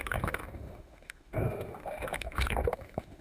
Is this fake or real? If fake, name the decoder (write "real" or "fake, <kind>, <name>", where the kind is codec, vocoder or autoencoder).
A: fake, autoencoder, DAC-VAE